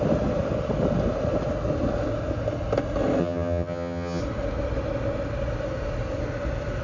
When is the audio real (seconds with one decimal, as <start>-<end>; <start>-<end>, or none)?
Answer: 0.0-3.2; 4.2-6.8